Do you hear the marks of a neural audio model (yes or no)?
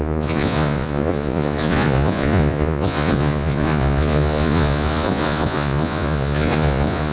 yes